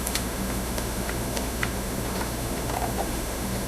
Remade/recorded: remade